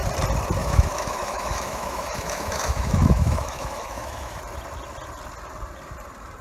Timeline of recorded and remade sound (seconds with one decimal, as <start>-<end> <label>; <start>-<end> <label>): 0.0-0.6 recorded; 0.6-4.4 remade; 4.4-6.4 recorded